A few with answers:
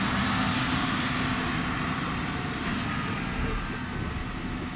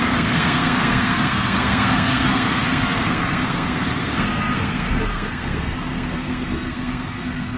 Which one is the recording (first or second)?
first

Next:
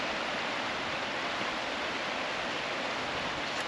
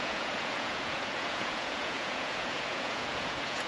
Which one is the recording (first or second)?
first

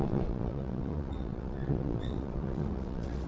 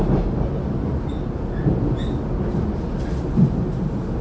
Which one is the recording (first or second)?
second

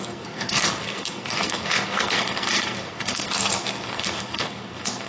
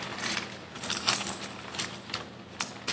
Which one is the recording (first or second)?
second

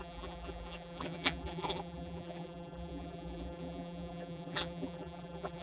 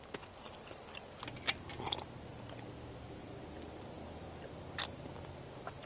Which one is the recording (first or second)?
second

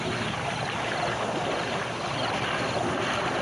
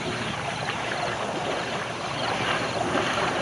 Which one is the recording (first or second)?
first